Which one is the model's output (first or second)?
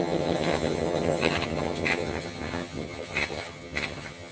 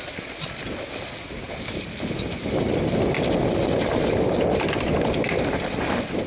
first